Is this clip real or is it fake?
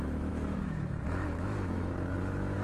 fake